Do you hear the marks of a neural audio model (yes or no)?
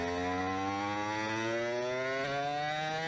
no